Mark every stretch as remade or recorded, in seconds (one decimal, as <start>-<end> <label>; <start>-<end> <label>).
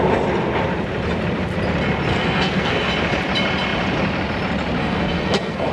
0.0-2.1 recorded; 2.1-2.9 remade; 2.9-4.8 recorded; 4.8-5.7 remade